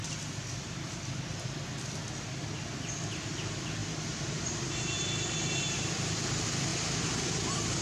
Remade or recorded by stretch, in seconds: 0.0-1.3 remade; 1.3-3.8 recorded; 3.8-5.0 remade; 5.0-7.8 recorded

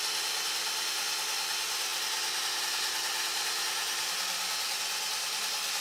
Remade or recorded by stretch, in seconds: 0.0-5.8 recorded